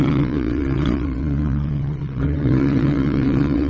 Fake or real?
fake